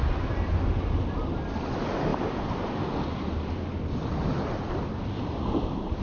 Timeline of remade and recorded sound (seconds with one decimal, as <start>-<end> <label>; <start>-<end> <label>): 0.0-6.0 recorded

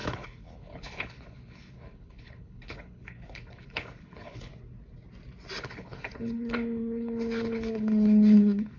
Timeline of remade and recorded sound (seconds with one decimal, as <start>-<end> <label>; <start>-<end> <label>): 0.0-4.5 remade; 4.5-5.6 recorded; 5.6-8.8 remade

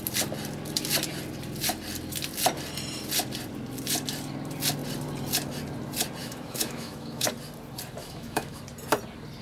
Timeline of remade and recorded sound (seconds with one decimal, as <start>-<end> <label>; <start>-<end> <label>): 0.0-6.2 recorded; 6.2-7.3 remade; 7.3-8.0 recorded; 8.0-8.6 remade; 8.6-9.4 recorded

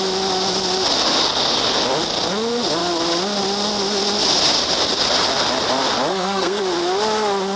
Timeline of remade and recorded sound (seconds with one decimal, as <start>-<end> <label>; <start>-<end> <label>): 0.0-6.1 recorded; 6.1-6.6 remade; 6.6-7.6 recorded

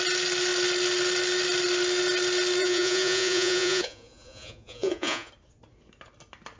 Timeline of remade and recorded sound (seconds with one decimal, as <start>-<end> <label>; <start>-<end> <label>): 0.0-2.6 recorded; 2.6-5.3 remade; 5.3-6.6 recorded

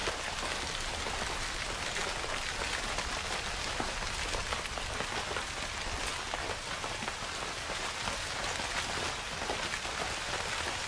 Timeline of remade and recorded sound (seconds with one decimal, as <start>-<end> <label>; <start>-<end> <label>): 0.0-0.9 remade; 0.9-7.1 recorded; 7.1-7.8 remade; 7.8-10.9 recorded

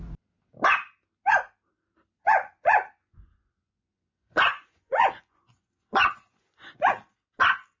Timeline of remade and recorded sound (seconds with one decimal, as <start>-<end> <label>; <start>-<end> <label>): 0.0-2.2 recorded; 2.2-6.9 remade; 6.9-7.8 recorded